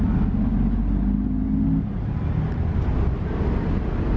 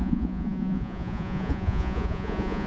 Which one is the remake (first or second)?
second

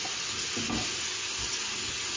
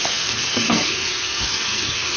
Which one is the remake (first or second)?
second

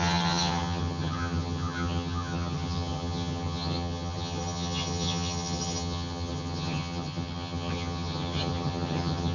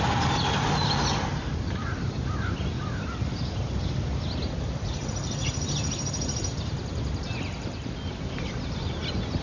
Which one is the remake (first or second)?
first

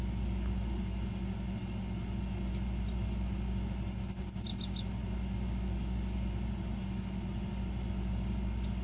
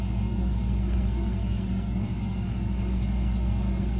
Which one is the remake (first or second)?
second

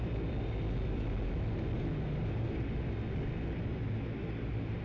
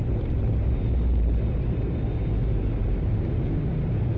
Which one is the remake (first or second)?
second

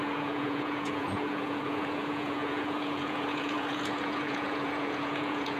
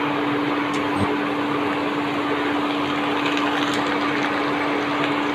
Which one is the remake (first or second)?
first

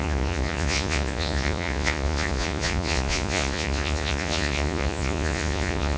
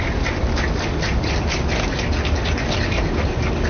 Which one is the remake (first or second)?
first